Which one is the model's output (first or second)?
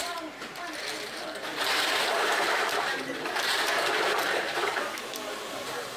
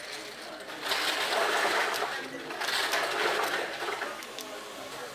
first